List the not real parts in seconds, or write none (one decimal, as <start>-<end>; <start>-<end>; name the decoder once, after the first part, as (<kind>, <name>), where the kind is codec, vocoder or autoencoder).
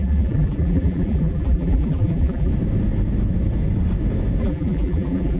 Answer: 0.0-2.5 (vocoder, BigVGAN v2); 4.4-5.4